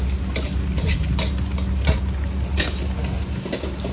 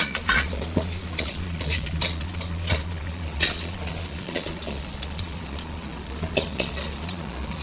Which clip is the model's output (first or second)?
second